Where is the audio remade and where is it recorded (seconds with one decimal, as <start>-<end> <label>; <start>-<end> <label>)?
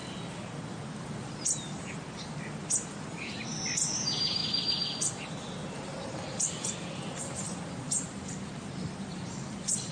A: 0.0-3.9 recorded; 3.9-4.4 remade; 4.4-5.7 recorded; 5.7-9.9 remade